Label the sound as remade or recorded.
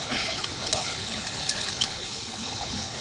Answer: remade